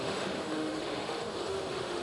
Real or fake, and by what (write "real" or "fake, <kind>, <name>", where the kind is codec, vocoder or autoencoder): fake, autoencoder, DAC-VAE